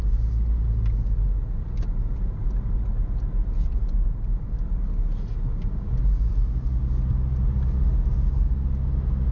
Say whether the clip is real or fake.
real